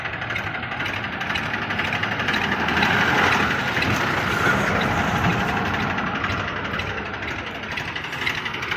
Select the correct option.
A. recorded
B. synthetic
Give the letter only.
A